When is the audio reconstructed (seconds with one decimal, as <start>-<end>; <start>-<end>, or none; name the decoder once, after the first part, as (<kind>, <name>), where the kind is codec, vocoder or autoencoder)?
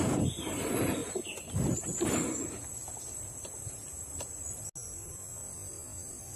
none